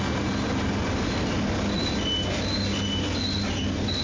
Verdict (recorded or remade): recorded